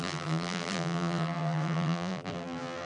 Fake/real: fake